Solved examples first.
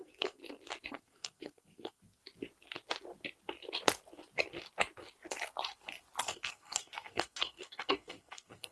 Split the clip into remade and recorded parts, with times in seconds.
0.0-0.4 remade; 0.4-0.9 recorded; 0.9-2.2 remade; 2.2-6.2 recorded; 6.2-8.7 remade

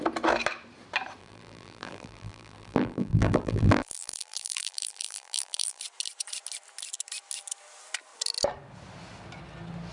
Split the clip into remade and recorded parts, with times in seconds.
0.0-1.2 recorded; 1.2-5.8 remade; 5.8-9.9 recorded

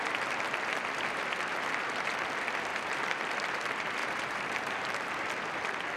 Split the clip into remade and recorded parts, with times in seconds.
0.0-2.7 recorded; 2.7-3.2 remade; 3.2-4.0 recorded; 4.0-5.3 remade; 5.3-6.0 recorded